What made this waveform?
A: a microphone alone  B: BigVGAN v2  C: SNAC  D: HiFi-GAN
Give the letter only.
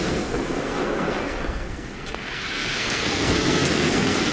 C